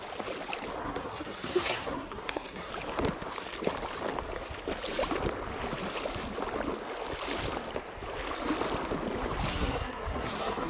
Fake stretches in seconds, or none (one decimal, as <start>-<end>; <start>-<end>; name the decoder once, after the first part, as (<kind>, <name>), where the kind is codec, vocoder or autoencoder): 0.8-2.7 (codec, SNAC); 9.5-10.7